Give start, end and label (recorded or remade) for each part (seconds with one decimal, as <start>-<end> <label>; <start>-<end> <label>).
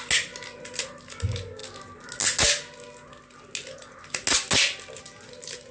0.0-5.7 recorded